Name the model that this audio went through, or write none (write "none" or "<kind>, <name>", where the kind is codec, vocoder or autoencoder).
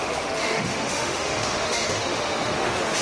autoencoder, DAC-VAE